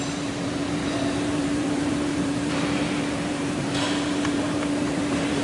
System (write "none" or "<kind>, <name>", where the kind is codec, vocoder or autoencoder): vocoder, BigVGAN v2